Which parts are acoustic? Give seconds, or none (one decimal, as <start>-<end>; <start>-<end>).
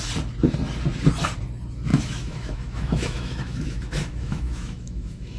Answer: 0.0-1.9